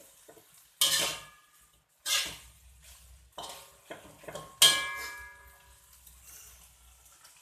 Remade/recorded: recorded